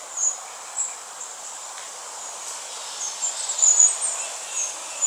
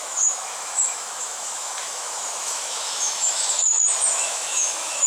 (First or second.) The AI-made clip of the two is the second